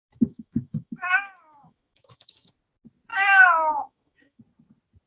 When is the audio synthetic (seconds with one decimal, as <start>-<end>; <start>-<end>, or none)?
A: 0.0-2.5; 3.1-4.4